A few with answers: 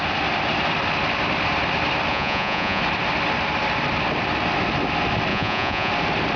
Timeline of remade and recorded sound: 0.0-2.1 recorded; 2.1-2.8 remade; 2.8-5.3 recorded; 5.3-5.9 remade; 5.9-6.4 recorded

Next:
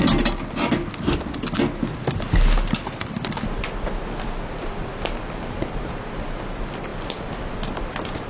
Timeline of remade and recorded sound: 0.0-8.3 recorded

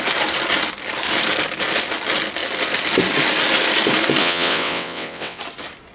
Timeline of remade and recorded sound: 0.0-4.2 recorded; 4.2-5.4 remade; 5.4-5.9 recorded

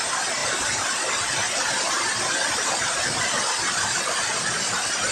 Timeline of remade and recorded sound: 0.0-5.1 recorded